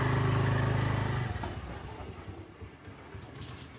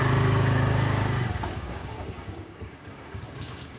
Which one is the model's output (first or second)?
second